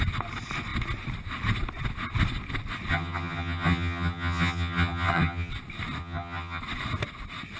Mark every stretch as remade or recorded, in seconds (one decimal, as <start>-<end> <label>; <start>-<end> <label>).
0.0-2.9 recorded; 2.9-5.5 remade; 5.5-6.0 recorded; 6.0-6.6 remade; 6.6-7.6 recorded